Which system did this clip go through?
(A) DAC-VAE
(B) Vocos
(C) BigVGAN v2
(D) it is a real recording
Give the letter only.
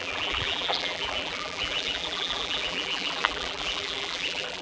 C